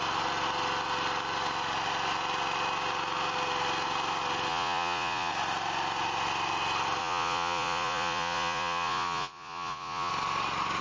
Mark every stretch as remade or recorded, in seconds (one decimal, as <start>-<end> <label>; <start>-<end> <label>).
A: 0.0-4.5 recorded; 4.5-5.3 remade; 5.3-7.0 recorded; 7.0-10.1 remade; 10.1-10.8 recorded